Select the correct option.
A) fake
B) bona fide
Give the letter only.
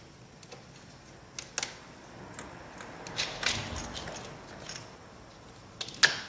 B